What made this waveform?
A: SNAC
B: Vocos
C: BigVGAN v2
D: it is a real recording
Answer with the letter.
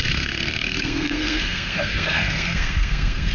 A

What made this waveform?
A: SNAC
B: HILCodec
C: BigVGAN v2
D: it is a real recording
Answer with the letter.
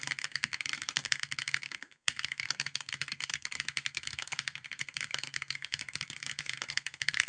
A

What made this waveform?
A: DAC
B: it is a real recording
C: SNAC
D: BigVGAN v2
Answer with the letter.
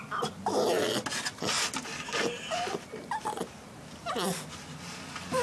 B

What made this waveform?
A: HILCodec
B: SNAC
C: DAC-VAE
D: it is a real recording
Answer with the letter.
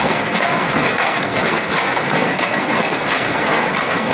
B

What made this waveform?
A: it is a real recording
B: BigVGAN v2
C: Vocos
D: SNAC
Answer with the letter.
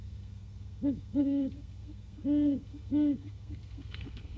D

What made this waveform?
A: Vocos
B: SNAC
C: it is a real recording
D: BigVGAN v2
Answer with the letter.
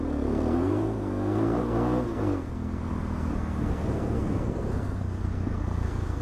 B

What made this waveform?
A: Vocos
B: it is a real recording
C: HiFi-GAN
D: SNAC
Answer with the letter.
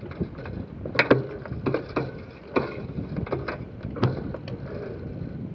B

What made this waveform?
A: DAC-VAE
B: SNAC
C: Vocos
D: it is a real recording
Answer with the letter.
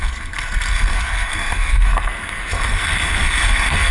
B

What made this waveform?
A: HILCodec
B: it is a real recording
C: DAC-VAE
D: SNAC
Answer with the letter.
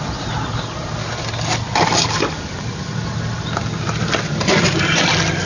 B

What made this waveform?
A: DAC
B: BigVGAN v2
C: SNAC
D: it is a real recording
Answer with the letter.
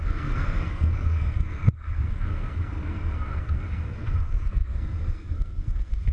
C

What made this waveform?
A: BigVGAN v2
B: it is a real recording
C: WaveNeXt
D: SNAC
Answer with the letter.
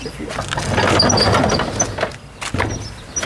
B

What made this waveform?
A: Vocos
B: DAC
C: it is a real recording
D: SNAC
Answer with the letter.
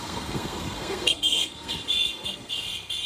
D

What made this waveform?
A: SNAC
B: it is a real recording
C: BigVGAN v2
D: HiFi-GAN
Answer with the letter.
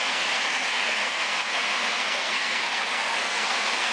A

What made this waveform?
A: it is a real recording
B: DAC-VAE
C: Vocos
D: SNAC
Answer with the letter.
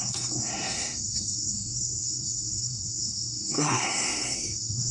D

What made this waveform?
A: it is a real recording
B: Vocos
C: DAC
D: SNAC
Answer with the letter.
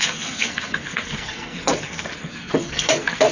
D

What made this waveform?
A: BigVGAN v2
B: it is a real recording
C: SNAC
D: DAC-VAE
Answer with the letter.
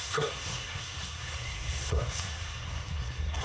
C